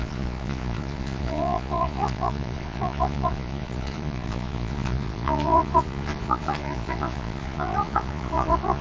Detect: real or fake fake